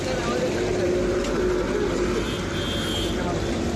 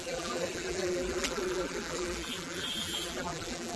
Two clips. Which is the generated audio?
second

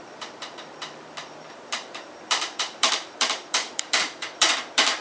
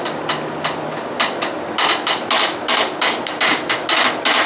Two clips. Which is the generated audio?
first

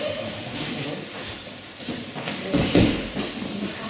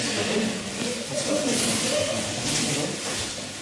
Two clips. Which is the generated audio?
first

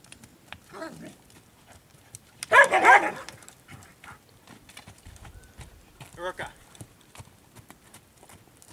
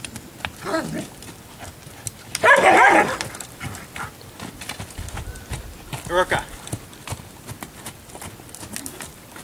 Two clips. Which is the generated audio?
first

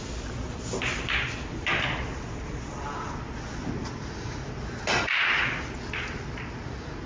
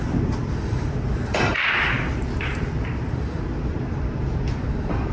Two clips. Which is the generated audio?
second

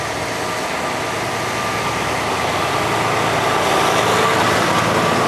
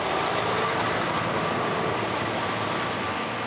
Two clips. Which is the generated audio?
second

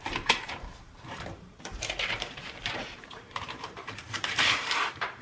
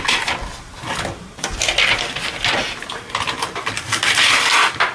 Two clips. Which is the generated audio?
first